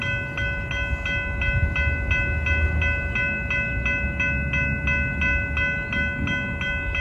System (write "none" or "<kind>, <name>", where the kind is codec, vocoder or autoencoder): none